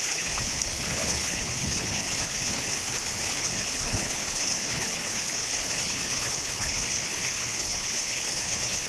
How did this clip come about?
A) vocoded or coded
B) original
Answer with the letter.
A